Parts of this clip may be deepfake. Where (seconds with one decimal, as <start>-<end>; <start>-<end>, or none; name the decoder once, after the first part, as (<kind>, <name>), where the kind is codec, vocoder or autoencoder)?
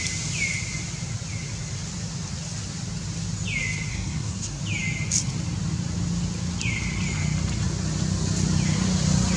3.9-4.6 (codec, SNAC)